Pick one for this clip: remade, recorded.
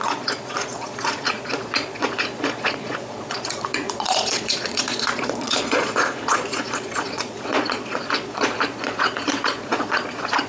remade